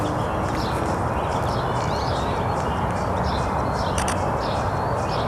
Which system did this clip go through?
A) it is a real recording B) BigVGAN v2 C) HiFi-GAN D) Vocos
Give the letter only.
A